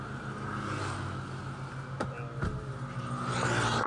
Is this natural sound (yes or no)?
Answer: yes